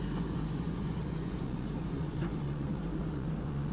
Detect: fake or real fake